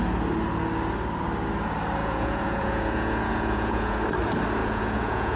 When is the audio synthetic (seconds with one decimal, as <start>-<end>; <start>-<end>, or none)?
2.0-4.0; 4.6-5.4